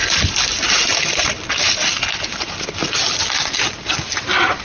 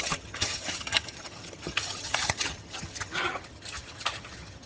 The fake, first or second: second